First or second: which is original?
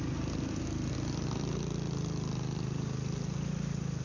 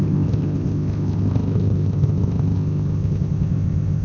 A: first